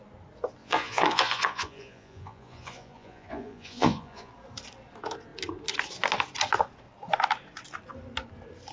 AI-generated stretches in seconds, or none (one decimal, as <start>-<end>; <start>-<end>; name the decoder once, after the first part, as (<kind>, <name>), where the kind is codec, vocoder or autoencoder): 0.6-4.3 (vocoder, Vocos)